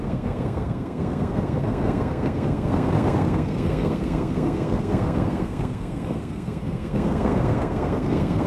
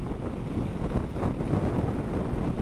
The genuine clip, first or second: second